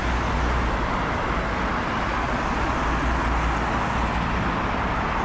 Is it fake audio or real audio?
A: real